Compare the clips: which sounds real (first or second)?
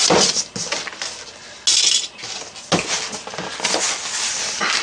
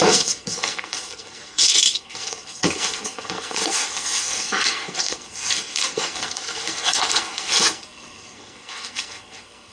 first